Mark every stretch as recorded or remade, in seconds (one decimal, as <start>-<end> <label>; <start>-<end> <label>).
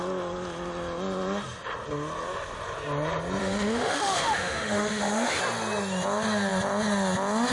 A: 0.0-3.4 recorded; 3.4-5.4 remade; 5.4-7.5 recorded